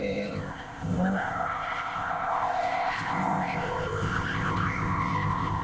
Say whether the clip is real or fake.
fake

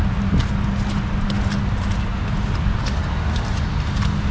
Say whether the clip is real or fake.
real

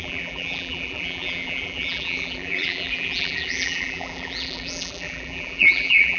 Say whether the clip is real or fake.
fake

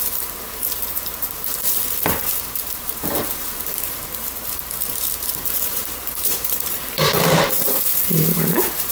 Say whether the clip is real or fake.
fake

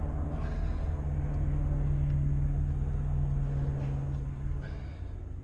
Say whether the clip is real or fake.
real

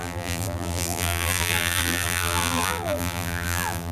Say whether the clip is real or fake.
fake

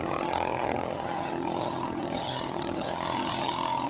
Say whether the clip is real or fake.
fake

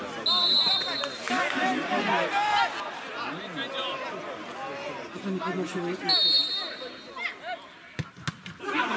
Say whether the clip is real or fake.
real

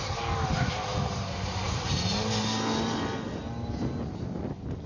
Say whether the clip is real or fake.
real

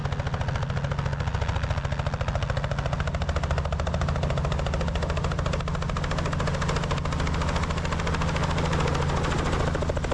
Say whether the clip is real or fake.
real